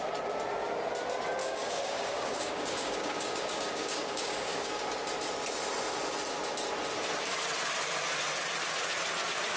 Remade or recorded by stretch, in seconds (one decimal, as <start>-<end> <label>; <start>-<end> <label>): 0.0-1.4 recorded; 1.4-4.8 remade; 4.8-9.6 recorded